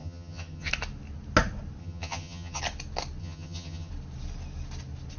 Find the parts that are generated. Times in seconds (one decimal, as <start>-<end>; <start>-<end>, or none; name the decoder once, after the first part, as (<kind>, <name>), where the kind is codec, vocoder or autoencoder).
0.0-0.7 (vocoder, HiFi-GAN); 1.8-2.6; 3.2-3.9

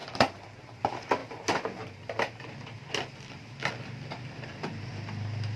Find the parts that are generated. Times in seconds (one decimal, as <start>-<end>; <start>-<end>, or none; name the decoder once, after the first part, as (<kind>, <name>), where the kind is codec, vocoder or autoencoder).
none

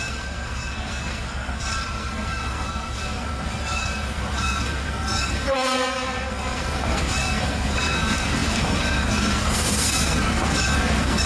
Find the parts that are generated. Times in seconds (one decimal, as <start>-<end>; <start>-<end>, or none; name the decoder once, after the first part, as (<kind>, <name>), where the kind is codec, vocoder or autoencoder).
0.0-11.3 (codec, SNAC)

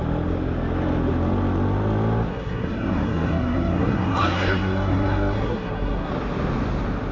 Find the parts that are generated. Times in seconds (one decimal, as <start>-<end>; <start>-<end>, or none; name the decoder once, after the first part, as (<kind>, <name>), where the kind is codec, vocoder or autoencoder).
2.3-6.1 (codec, SNAC)

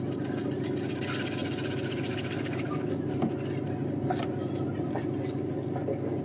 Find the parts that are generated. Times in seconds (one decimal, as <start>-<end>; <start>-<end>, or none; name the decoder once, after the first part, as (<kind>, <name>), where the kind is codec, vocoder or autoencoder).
1.4-3.3 (vocoder, BigVGAN v2)

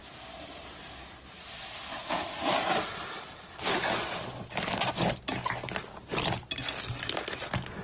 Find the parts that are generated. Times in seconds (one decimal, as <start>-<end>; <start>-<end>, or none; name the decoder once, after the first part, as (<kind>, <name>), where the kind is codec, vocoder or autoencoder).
none

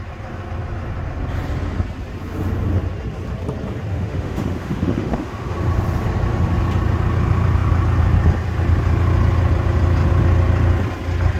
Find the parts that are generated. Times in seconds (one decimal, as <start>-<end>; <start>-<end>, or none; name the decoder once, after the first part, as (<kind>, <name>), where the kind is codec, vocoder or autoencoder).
3.9-5.5 (autoencoder, DAC-VAE)